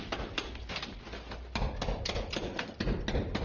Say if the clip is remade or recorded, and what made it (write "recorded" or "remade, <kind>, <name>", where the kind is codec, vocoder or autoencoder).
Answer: recorded